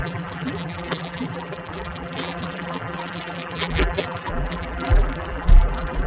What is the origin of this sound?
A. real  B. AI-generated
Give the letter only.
B